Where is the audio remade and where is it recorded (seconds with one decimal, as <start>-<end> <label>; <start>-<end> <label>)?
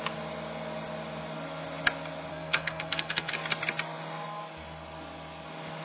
0.0-2.3 recorded; 2.3-3.3 remade; 3.3-5.8 recorded